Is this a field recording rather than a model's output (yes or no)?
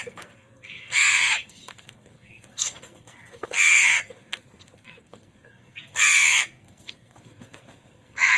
no